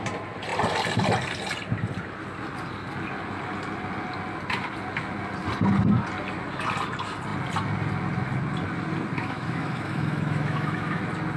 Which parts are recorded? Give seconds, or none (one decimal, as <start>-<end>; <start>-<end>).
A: 0.0-9.2; 11.0-11.4